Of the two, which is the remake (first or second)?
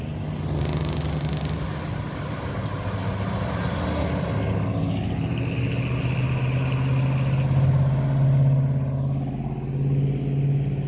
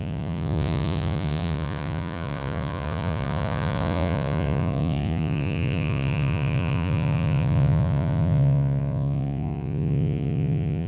second